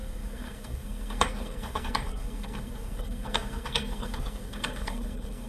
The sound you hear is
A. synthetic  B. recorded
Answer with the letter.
A